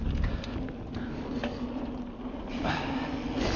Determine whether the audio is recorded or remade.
recorded